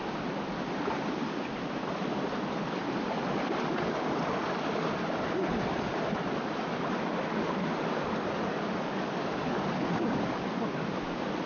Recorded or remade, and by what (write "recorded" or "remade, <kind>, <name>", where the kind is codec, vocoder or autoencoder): recorded